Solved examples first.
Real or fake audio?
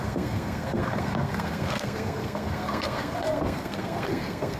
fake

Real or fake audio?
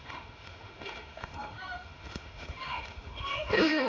fake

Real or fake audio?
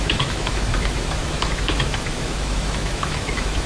fake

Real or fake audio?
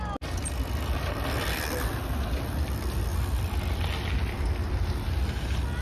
real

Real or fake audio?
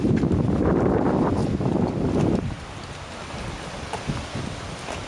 fake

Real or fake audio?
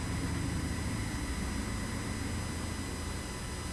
real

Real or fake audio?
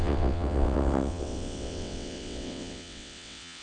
fake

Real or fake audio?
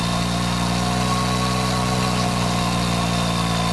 real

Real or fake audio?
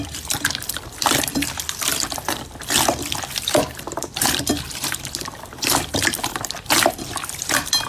fake